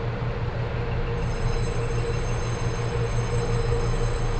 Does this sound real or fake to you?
real